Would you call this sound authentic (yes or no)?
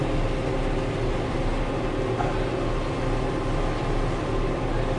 yes